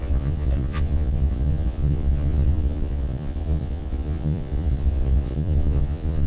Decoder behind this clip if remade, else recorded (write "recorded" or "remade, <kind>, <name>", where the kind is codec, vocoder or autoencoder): remade, vocoder, Vocos